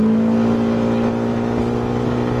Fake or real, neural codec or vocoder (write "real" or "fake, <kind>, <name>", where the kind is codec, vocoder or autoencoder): real